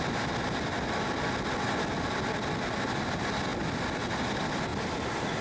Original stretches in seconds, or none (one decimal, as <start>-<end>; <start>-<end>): 0.0-5.4